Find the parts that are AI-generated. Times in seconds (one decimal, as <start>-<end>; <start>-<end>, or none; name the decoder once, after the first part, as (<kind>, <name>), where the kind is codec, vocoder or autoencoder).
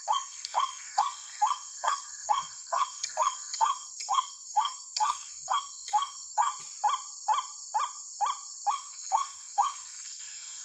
0.0-6.5 (codec, SNAC); 8.7-10.6